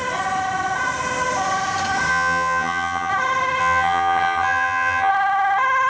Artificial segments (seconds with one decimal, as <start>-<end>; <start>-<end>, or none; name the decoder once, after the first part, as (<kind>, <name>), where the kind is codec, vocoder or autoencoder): 2.1-3.1 (vocoder, HiFi-GAN); 3.6-5.1